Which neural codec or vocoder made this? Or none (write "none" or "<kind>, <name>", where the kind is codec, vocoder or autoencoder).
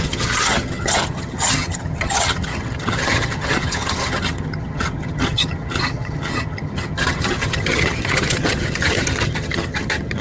vocoder, HiFi-GAN